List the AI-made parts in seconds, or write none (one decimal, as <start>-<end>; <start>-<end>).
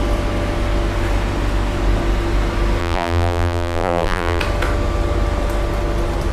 2.8-4.4